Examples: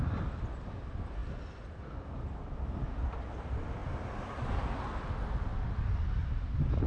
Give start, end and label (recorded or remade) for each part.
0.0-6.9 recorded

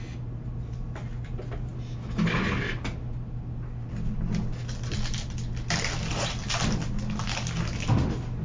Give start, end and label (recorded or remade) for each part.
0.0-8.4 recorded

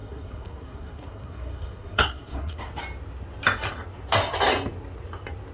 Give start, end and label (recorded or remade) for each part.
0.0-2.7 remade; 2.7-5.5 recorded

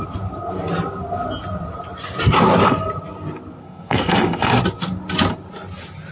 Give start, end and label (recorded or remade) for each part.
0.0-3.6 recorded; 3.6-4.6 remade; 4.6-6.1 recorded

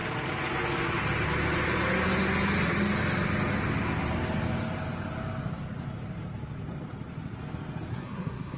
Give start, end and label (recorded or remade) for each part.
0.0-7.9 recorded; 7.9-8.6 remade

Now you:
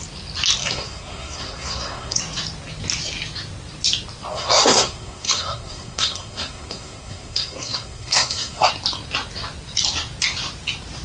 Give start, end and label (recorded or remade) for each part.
0.0-0.6 recorded; 0.6-2.2 remade; 2.2-4.3 recorded; 4.3-8.7 remade; 8.7-11.0 recorded

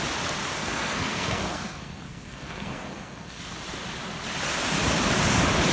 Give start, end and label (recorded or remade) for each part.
0.0-0.6 recorded; 0.6-3.4 remade; 3.4-5.7 recorded

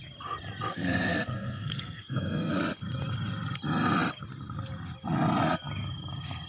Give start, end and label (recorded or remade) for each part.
0.0-0.7 recorded; 0.7-2.5 remade; 2.5-6.5 recorded